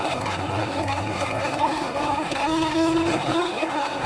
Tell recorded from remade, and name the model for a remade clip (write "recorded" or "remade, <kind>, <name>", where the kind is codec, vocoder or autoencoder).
remade, codec, SNAC